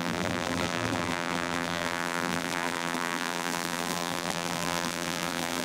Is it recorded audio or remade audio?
remade